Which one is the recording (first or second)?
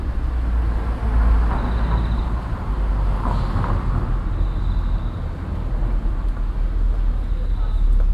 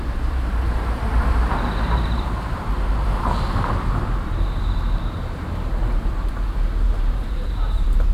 first